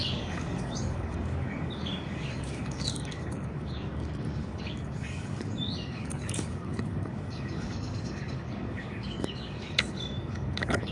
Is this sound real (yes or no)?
no